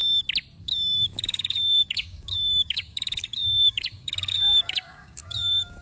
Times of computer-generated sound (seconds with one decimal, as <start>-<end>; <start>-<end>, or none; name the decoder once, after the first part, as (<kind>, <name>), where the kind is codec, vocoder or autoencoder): 0.6-5.8 (codec, DAC)